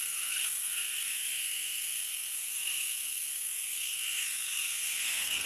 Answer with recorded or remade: remade